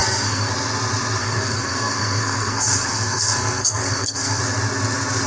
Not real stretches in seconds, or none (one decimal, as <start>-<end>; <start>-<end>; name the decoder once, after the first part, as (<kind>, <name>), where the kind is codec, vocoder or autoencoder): 0.0-0.5 (codec, SNAC); 1.2-4.4